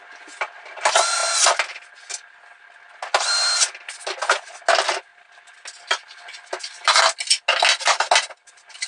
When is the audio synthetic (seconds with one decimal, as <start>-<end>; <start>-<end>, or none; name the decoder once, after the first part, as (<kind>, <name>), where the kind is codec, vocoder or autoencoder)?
none